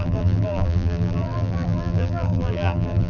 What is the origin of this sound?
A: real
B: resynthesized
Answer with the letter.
B